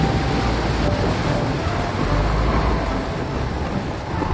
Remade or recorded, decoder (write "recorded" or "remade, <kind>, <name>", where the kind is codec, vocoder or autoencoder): recorded